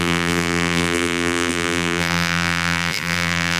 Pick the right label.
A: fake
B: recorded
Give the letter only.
A